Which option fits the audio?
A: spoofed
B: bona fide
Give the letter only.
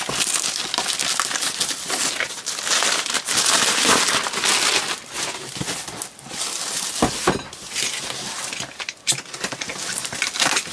B